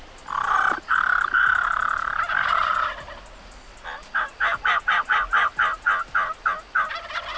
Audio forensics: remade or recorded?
recorded